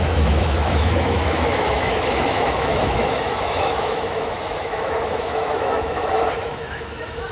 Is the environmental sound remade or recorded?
remade